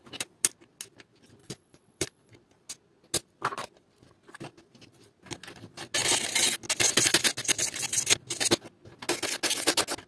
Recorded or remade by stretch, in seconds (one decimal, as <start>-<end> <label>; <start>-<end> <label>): 0.0-1.4 recorded; 1.4-2.3 remade; 2.3-10.1 recorded